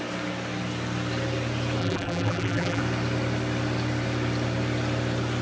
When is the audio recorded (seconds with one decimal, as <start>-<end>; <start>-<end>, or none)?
0.0-1.8; 2.8-5.4